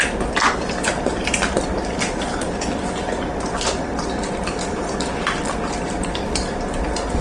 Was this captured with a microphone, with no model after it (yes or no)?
no